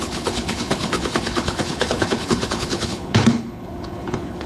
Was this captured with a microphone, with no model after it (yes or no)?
no